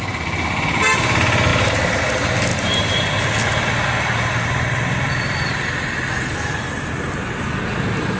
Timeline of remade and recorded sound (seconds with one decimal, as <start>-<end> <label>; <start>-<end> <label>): 0.0-2.5 recorded; 2.5-3.2 remade; 3.2-8.2 recorded